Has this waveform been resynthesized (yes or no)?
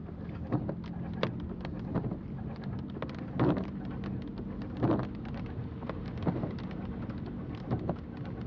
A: no